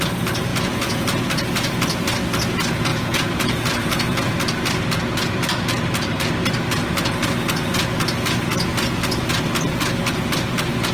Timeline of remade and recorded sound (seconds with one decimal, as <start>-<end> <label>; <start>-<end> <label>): 0.0-0.5 recorded; 0.5-1.3 remade; 1.3-2.9 recorded; 2.9-4.3 remade; 4.3-10.9 recorded